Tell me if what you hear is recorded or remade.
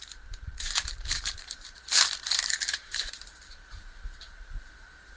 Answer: remade